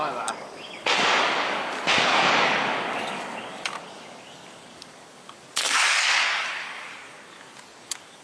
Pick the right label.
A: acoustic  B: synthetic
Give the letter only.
B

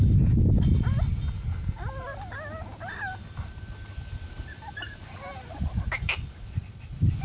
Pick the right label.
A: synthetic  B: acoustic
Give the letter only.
B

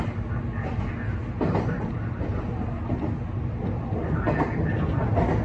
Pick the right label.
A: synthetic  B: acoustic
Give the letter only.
B